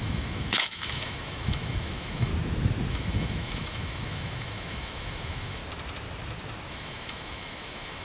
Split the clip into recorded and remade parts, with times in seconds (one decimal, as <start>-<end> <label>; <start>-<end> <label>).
0.0-2.3 remade; 2.3-2.9 recorded; 2.9-5.6 remade; 5.6-6.7 recorded; 6.7-8.0 remade